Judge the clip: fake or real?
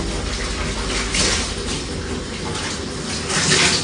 real